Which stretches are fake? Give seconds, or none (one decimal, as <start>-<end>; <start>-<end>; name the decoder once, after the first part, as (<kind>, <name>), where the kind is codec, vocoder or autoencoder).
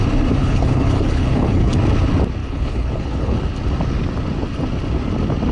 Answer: 0.4-1.7 (codec, HILCodec); 2.4-3.4